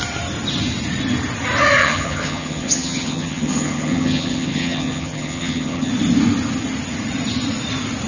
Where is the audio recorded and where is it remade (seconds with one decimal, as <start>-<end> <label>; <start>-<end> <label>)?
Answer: 0.0-1.8 recorded; 1.8-5.9 remade; 5.9-8.1 recorded